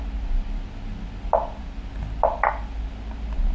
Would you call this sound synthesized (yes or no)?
no